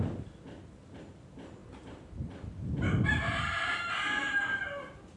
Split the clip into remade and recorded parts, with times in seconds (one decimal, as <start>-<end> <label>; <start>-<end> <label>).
0.0-1.6 recorded; 1.6-2.1 remade; 2.1-5.2 recorded